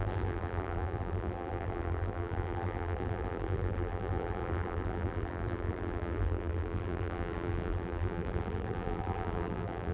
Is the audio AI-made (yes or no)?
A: yes